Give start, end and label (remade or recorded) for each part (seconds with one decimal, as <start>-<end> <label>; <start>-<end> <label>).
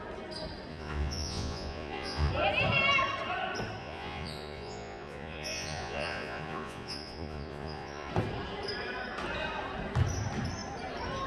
0.0-0.7 recorded; 0.7-2.3 remade; 2.3-3.8 recorded; 3.8-8.1 remade; 8.1-11.3 recorded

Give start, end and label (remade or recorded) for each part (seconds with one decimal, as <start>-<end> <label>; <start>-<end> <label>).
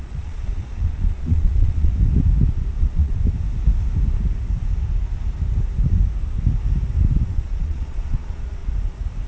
0.0-1.9 remade; 1.9-2.8 recorded; 2.8-3.2 remade; 3.2-7.3 recorded; 7.3-8.6 remade; 8.6-9.3 recorded